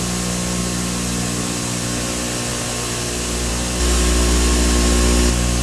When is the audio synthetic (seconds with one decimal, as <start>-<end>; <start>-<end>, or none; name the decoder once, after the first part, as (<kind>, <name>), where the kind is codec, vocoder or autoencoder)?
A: none